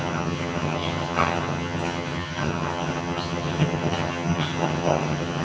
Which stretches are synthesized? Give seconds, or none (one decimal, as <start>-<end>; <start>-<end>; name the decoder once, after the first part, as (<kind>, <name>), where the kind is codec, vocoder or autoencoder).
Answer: 0.0-5.4 (vocoder, HiFi-GAN)

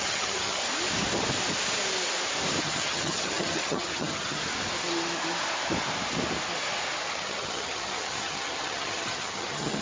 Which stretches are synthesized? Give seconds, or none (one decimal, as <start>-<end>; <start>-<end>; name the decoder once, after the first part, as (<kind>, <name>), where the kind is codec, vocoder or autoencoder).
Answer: 0.0-0.6 (vocoder, HiFi-GAN); 2.6-4.4; 7.1-9.8

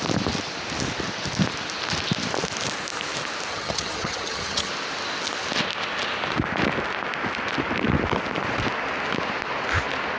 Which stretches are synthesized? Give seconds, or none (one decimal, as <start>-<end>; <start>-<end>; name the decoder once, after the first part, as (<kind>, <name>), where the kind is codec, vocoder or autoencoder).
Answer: 3.5-4.7 (vocoder, HiFi-GAN)

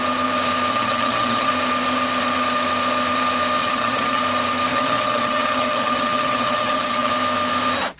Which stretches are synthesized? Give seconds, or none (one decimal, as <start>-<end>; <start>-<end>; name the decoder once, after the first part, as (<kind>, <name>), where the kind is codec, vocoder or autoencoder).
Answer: 0.7-1.5 (vocoder, HiFi-GAN); 3.6-4.2; 4.7-7.1

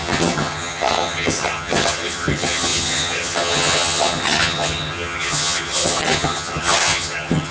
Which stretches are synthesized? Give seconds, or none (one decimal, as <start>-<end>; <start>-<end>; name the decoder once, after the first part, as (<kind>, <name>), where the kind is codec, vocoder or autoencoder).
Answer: 0.0-7.5 (vocoder, HiFi-GAN)